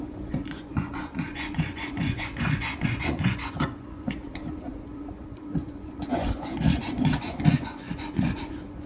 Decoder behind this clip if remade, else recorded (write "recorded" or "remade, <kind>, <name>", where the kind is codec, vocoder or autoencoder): remade, vocoder, Vocos